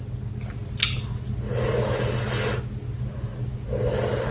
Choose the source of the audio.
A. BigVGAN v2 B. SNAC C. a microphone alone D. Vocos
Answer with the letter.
C